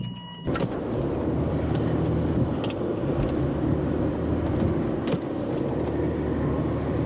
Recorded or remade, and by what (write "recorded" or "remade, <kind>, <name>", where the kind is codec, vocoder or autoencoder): recorded